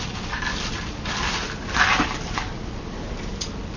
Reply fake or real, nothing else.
real